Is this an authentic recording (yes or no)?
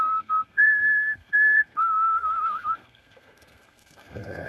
no